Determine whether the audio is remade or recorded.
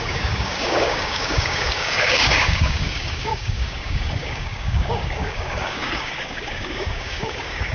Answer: remade